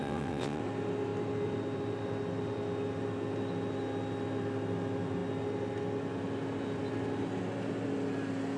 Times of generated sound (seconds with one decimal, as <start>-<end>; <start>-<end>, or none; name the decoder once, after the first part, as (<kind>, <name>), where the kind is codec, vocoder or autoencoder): 0.0-0.6 (vocoder, WaveNeXt)